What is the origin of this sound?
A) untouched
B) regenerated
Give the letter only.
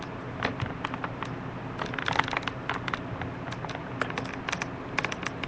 A